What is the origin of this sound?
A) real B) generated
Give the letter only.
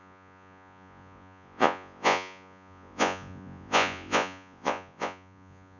B